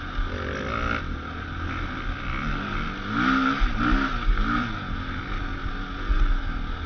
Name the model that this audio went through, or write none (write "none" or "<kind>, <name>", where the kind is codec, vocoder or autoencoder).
none